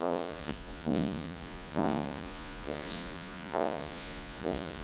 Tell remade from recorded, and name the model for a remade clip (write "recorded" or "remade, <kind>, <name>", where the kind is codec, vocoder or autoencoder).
remade, vocoder, Vocos